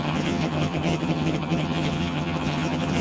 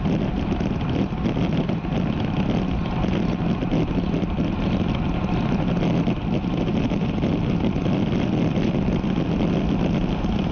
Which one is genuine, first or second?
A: second